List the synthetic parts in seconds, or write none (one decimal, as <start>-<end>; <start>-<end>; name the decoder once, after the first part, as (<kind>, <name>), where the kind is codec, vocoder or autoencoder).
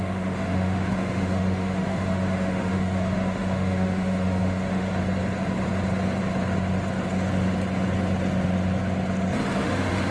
0.0-4.9 (autoencoder, DAC-VAE); 9.6-10.1